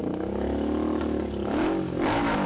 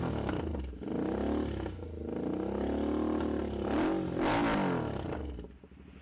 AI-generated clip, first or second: first